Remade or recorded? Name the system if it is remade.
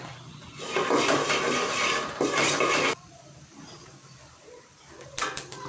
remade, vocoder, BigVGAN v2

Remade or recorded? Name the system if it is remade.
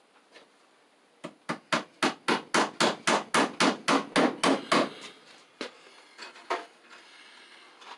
recorded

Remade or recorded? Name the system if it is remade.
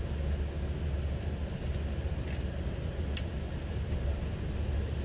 recorded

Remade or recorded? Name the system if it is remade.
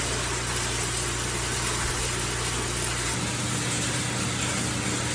recorded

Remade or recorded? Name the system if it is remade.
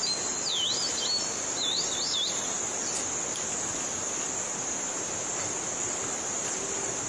recorded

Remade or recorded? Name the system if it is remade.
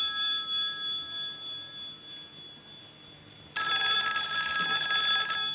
recorded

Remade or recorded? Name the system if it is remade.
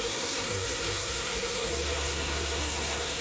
remade, codec, SNAC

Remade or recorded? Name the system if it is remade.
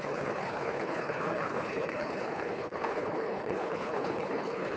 remade, codec, HILCodec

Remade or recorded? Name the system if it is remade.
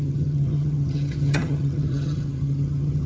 remade, vocoder, HiFi-GAN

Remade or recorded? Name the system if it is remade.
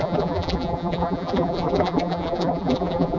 remade, vocoder, BigVGAN v2